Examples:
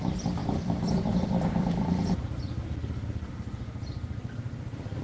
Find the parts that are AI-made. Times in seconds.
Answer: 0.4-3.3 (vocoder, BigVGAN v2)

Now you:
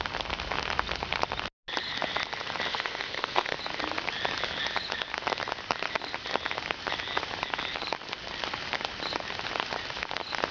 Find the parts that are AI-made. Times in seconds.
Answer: 2.7-3.6 (codec, SNAC)

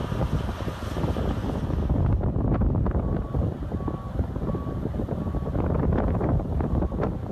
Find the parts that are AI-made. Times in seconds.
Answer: 4.4-7.3 (vocoder, BigVGAN v2)

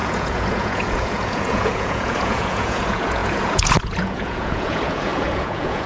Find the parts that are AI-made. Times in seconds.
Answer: 0.0-5.9 (vocoder, Vocos)